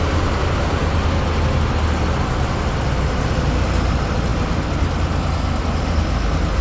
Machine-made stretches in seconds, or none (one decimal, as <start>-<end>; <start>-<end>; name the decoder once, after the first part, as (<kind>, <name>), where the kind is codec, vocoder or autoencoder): none

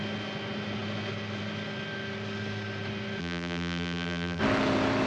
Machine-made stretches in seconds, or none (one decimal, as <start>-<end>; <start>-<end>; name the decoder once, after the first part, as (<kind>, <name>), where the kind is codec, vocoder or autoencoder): 3.2-4.4 (vocoder, BigVGAN v2)